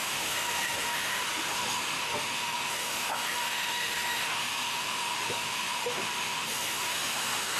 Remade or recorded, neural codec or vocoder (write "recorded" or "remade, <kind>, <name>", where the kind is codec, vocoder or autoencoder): remade, autoencoder, DAC-VAE